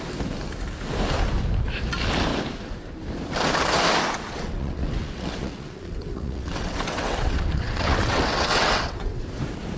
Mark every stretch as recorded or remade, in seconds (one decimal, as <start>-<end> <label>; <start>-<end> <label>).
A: 0.0-4.3 recorded; 4.3-9.2 remade; 9.2-9.8 recorded